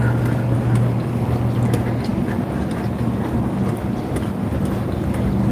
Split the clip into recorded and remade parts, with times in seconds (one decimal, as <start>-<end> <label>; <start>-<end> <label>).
0.0-5.5 recorded